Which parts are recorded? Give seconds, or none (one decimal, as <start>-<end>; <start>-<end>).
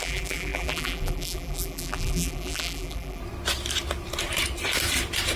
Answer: 3.2-5.4